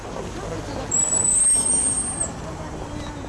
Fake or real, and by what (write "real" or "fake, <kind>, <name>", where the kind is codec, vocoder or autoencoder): real